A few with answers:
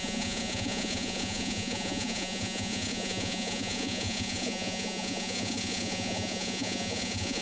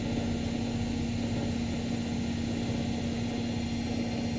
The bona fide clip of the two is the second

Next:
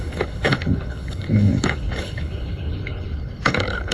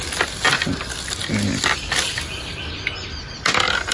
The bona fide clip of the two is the second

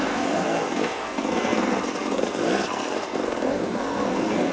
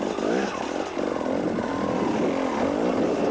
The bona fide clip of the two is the second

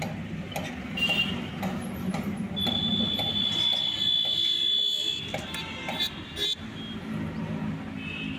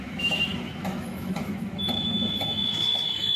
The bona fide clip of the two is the first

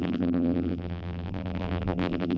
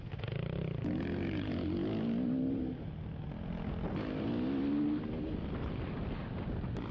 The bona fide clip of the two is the second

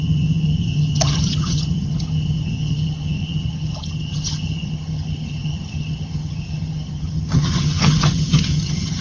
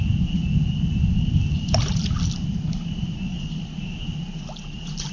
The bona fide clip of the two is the second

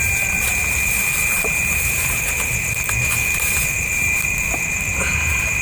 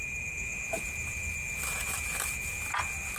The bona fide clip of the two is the second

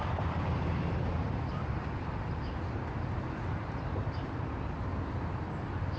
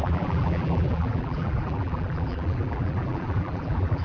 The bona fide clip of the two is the first